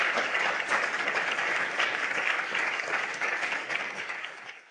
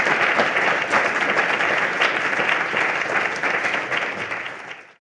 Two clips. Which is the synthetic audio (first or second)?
first